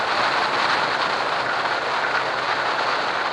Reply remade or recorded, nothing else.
recorded